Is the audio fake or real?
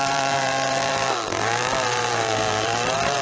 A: fake